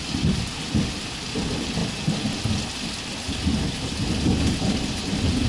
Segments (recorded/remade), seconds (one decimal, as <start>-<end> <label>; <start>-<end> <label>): 0.0-1.8 remade; 1.8-5.0 recorded; 5.0-5.5 remade